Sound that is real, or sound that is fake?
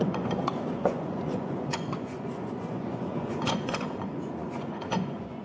fake